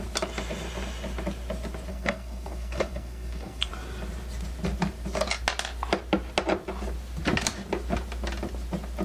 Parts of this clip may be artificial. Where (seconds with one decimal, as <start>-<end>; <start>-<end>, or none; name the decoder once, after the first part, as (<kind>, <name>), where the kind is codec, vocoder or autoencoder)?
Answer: 1.9-3.7 (codec, SNAC)